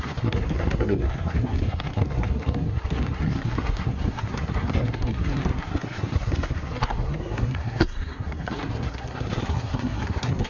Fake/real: fake